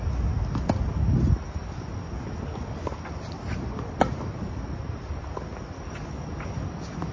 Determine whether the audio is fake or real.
real